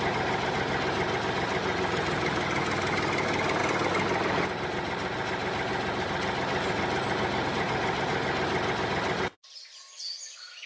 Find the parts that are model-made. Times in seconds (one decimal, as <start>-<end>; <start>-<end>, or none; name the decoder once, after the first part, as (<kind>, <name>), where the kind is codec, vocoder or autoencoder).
none